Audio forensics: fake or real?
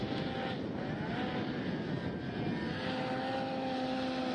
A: real